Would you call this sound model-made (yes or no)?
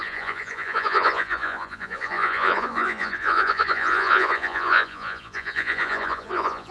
yes